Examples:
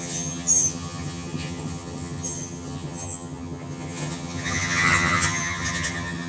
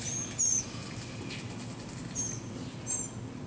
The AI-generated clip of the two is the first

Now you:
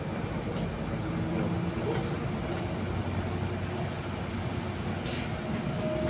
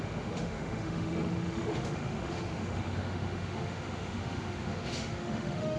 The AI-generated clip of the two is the second